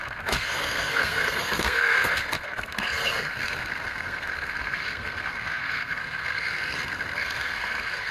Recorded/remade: remade